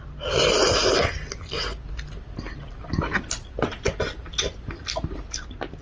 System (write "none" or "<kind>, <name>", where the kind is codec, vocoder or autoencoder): none